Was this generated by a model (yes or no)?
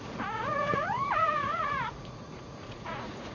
yes